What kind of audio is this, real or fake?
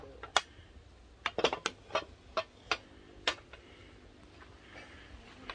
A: real